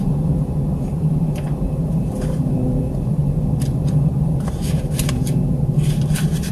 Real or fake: fake